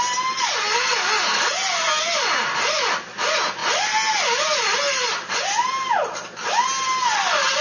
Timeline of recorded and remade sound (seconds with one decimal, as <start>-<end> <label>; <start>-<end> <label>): 0.0-7.6 recorded